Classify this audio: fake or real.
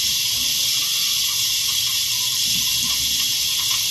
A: real